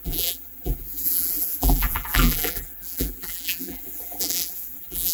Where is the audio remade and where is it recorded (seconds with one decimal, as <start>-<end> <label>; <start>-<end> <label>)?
0.0-5.1 remade